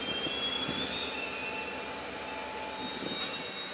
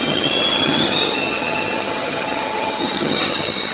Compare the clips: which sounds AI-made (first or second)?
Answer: second